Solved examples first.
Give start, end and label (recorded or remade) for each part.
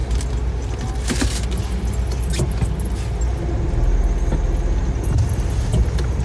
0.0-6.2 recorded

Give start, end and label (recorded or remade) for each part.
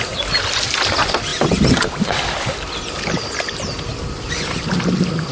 0.0-5.3 recorded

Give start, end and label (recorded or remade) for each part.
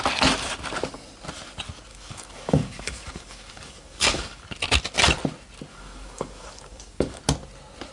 0.0-1.9 recorded; 1.9-4.4 remade; 4.4-5.7 recorded; 5.7-7.2 remade; 7.2-7.9 recorded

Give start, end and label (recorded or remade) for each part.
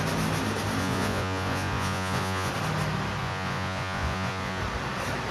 0.0-0.8 recorded; 0.8-2.5 remade; 2.5-3.2 recorded; 3.2-4.6 remade; 4.6-5.3 recorded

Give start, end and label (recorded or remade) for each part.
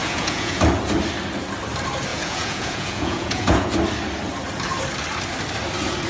0.0-0.6 remade; 0.6-2.1 recorded; 2.1-3.7 remade; 3.7-6.1 recorded